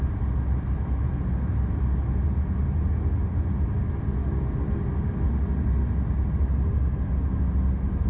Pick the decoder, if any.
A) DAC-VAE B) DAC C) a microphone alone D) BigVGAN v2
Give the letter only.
C